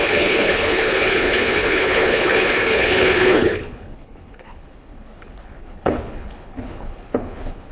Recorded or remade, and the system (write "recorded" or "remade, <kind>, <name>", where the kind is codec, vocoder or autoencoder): remade, codec, HILCodec